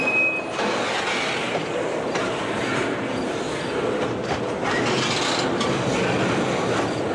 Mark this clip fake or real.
real